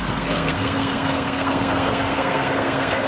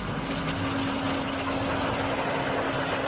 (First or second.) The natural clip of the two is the second